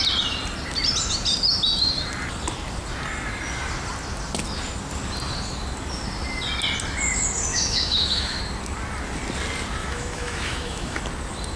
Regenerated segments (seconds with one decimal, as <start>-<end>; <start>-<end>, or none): 7.5-8.4; 9.8-11.0